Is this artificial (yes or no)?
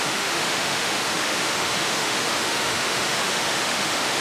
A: yes